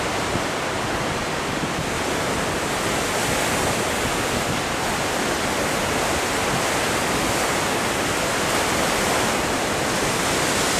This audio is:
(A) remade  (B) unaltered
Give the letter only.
B